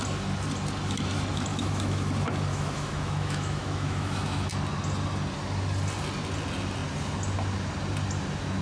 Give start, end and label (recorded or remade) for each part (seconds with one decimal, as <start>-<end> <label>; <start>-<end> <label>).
0.0-1.5 recorded; 1.5-2.1 remade; 2.1-2.5 recorded; 2.5-4.5 remade; 4.5-8.6 recorded